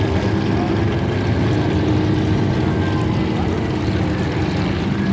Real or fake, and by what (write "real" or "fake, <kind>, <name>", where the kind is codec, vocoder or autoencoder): real